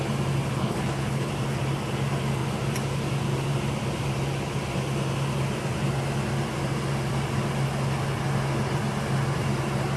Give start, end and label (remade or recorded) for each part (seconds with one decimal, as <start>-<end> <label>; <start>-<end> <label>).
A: 0.0-0.6 recorded; 0.6-1.3 remade; 1.3-10.0 recorded